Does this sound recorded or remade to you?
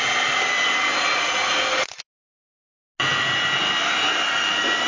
recorded